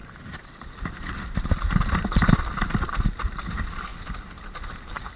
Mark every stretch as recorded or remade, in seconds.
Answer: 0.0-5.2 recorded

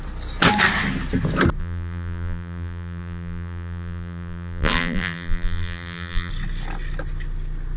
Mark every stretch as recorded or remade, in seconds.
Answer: 0.0-1.6 recorded; 1.6-6.3 remade; 6.3-7.8 recorded

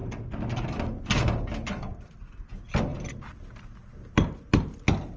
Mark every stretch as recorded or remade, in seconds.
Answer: 0.0-2.9 recorded; 2.9-4.1 remade; 4.1-5.2 recorded

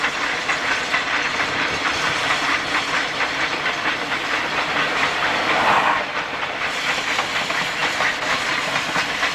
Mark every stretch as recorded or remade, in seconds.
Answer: 0.0-1.3 recorded; 1.3-2.3 remade; 2.3-9.3 recorded